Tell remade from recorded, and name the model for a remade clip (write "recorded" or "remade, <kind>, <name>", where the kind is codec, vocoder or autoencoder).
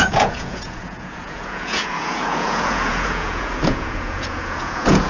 remade, vocoder, Vocos